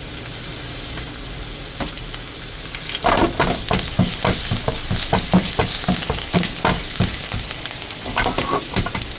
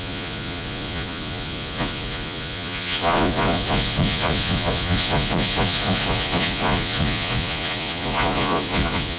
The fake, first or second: second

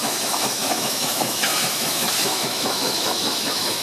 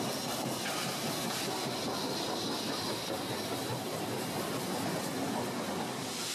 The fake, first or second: first